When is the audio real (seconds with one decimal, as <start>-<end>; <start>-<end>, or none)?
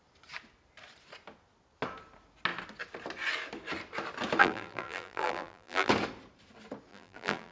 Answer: 0.0-4.4; 5.9-6.9